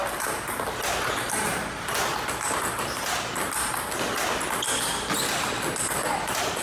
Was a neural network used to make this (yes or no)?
no